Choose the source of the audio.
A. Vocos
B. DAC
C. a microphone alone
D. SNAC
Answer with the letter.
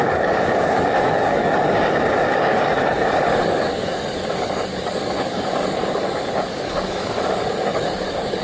B